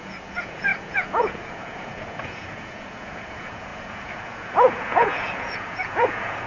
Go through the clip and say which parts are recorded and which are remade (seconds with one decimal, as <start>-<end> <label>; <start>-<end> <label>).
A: 0.0-6.5 remade